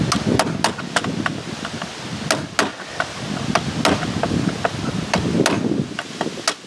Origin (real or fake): real